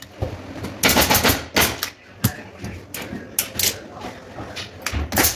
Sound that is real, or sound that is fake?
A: real